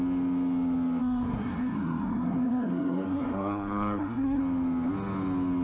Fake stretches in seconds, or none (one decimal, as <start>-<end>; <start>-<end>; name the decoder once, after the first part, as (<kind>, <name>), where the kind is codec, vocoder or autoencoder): 1.0-4.4 (codec, SNAC)